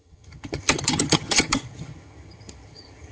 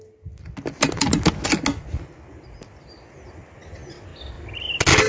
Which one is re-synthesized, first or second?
first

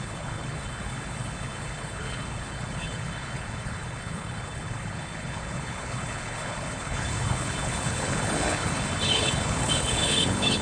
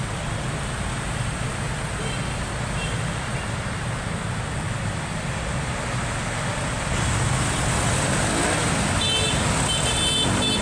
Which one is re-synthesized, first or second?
first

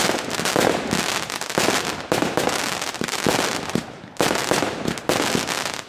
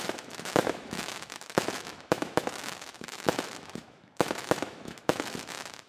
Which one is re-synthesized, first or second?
second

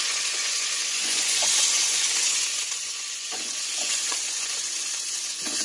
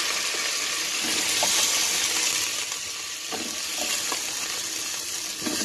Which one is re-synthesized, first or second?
first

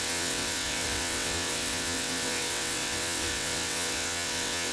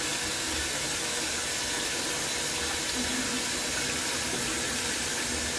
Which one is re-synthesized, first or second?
first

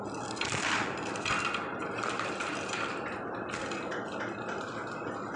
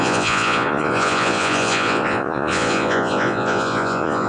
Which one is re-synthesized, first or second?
second